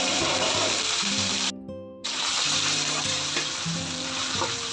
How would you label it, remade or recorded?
remade